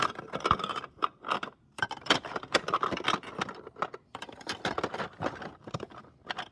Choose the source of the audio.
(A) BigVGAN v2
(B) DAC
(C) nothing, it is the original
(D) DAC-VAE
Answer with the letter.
C